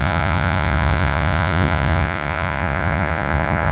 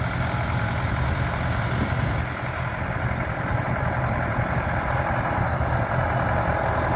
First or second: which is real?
second